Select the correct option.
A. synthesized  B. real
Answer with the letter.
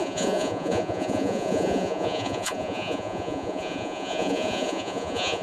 A